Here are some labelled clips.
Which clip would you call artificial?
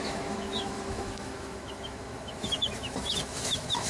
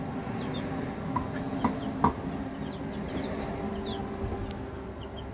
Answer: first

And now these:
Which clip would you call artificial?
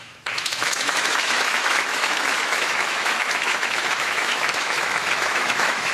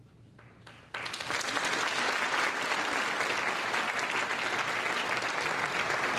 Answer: first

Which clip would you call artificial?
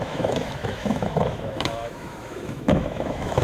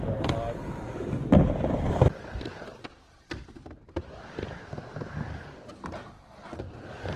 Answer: first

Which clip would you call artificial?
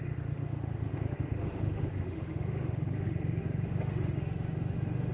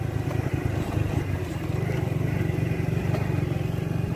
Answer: first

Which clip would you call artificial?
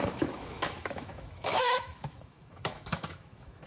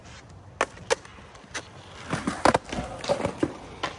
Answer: first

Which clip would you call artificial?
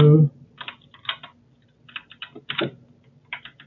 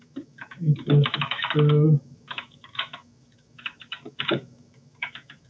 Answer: second